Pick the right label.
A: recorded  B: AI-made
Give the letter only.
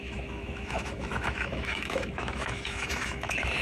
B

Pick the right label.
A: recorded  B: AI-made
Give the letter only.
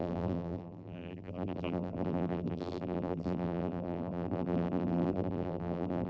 B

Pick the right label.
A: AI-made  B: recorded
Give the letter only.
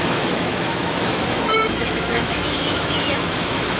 A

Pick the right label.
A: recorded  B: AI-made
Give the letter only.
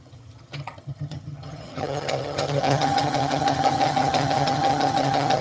B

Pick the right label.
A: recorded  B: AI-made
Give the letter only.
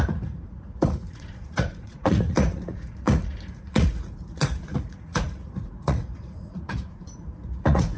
B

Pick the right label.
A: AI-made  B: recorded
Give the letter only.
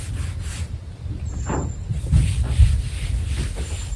B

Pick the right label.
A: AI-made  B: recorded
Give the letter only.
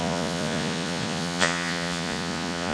A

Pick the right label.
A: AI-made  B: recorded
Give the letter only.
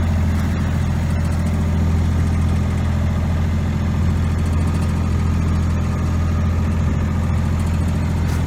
B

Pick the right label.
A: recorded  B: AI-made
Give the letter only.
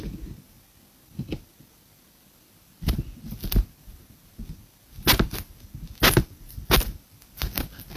A